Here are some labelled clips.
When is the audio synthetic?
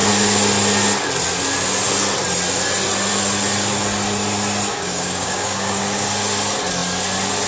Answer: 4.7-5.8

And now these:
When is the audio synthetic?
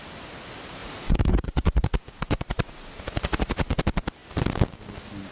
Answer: 0.8-3.8